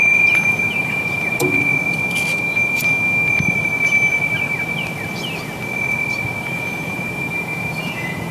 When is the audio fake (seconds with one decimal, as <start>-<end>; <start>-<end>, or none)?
0.0-1.7; 6.5-8.3